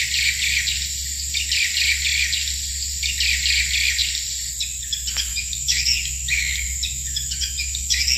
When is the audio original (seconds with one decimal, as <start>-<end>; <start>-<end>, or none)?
0.0-5.3